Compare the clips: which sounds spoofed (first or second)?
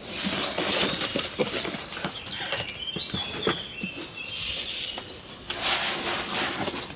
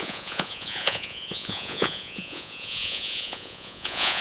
second